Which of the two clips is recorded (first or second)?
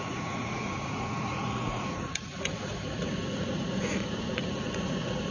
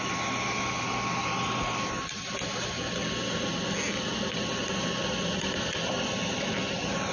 second